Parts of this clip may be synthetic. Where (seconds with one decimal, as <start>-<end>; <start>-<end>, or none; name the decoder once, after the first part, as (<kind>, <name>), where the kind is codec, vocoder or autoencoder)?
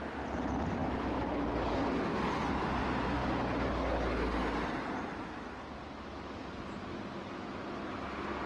none